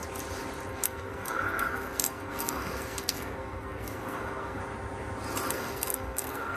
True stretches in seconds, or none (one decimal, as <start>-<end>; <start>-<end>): 0.0-0.7; 4.6-5.5

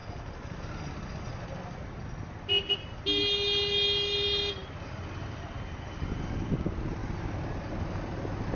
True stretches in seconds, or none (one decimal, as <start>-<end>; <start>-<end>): 0.0-8.6

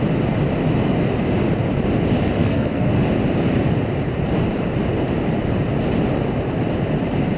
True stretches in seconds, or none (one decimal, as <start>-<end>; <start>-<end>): 0.0-2.4; 2.9-7.4

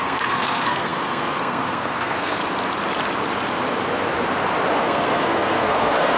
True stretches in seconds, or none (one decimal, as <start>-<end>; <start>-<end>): 2.4-4.8